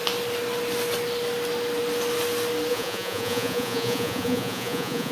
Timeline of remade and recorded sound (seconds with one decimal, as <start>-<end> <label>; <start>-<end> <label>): 0.0-2.7 recorded; 2.7-5.1 remade